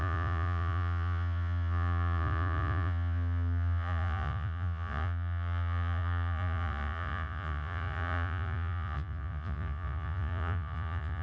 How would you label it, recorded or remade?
remade